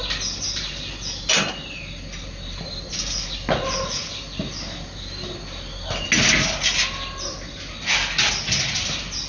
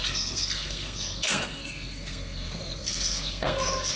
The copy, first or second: second